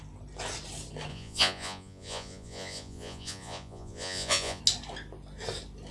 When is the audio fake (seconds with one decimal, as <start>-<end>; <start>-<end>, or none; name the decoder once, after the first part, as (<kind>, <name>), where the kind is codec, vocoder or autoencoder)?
1.1-4.6 (vocoder, Vocos)